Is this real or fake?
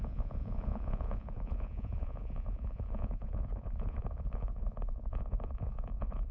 fake